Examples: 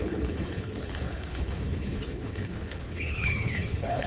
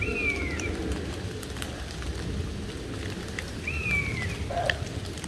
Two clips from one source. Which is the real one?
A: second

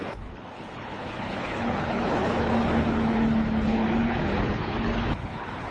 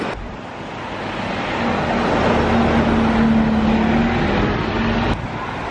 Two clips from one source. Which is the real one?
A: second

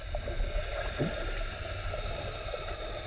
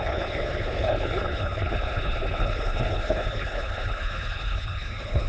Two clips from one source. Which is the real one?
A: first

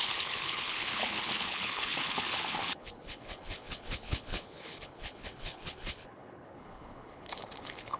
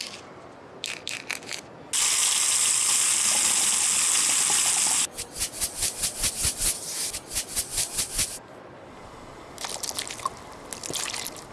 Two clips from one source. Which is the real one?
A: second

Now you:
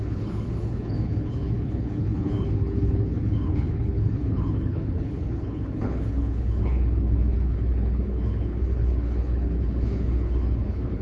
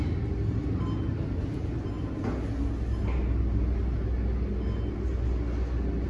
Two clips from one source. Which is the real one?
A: second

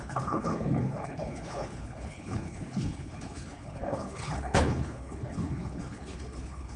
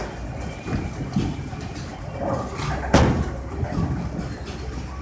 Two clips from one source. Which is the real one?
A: second